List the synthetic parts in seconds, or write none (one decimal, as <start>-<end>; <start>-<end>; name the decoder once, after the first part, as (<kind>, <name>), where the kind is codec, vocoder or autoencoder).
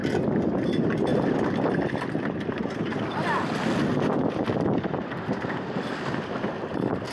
0.0-0.7 (vocoder, BigVGAN v2)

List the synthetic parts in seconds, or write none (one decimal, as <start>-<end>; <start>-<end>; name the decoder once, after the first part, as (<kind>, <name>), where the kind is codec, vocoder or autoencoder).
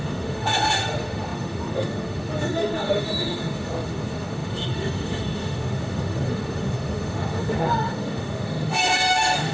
0.0-9.5 (autoencoder, DAC-VAE)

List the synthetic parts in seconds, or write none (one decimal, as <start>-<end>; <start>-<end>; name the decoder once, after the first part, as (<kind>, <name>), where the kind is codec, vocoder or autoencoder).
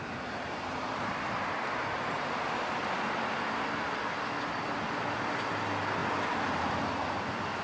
none